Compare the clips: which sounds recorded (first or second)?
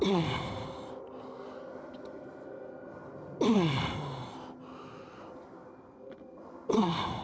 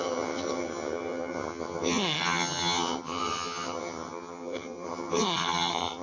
first